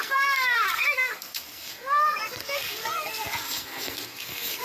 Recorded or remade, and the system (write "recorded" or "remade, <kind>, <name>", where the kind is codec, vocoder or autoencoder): remade, codec, SNAC